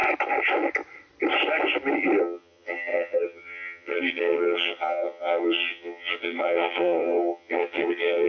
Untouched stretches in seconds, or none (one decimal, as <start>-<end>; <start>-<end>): 0.0-2.2